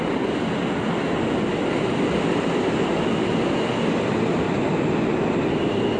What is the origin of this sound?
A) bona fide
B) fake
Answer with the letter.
A